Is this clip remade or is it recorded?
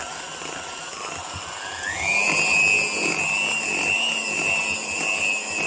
recorded